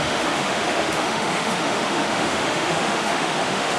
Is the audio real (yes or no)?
no